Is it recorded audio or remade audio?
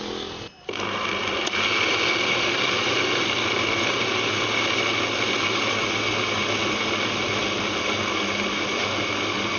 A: recorded